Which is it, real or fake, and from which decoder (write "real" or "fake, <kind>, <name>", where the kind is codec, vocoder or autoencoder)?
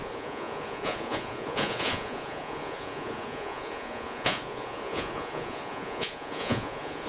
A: fake, vocoder, Vocos